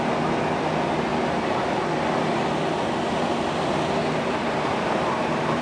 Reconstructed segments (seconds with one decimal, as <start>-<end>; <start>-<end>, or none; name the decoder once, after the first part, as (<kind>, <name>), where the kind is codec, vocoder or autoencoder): 1.1-1.6 (vocoder, BigVGAN v2); 4.0-5.6

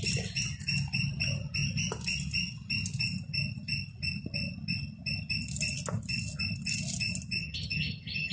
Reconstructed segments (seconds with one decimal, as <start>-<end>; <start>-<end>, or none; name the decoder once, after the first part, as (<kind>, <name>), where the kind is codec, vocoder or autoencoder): 7.4-8.3 (vocoder, HiFi-GAN)

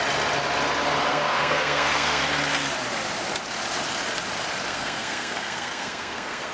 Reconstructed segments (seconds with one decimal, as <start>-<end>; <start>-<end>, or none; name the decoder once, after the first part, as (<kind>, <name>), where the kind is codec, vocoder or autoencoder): 1.1-2.2 (codec, SNAC); 4.7-6.5

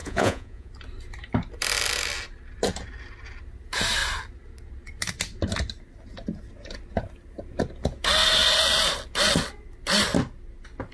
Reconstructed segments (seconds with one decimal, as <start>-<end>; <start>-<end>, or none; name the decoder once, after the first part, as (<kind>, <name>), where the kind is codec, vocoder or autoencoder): 0.0-0.7 (vocoder, Vocos)